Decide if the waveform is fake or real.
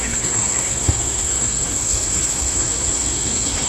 fake